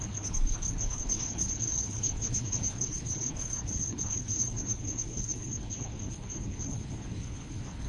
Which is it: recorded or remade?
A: remade